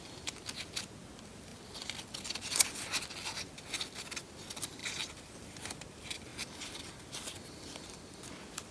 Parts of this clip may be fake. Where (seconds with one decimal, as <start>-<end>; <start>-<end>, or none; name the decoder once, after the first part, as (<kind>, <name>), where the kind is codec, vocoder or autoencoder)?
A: none